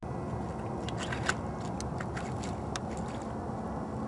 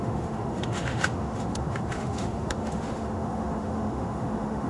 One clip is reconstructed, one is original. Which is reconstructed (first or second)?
second